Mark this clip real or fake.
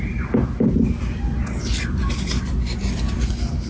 real